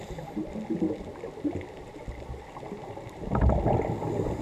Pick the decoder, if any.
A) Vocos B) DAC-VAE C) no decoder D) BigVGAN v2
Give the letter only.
C